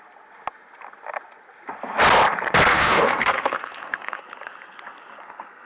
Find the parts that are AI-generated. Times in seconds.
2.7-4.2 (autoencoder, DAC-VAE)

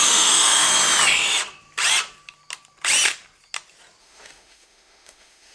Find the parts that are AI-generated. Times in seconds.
0.0-0.7 (autoencoder, DAC-VAE); 4.0-5.5

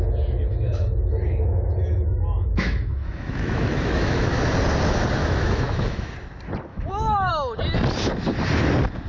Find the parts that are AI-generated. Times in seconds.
0.5-4.4 (autoencoder, DAC-VAE); 5.2-6.1; 6.7-7.3